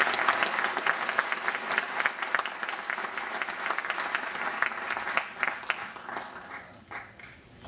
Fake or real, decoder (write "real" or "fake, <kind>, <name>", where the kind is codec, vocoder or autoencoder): real